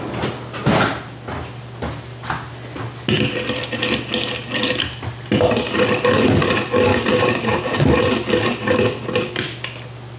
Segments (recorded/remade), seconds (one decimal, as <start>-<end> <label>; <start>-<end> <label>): 0.0-6.9 recorded; 6.9-7.8 remade; 7.8-10.2 recorded